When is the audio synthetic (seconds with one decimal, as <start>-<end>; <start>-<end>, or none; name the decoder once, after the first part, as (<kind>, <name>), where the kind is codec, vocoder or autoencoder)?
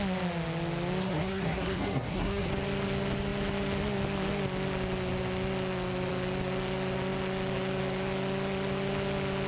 1.0-2.5 (codec, SNAC)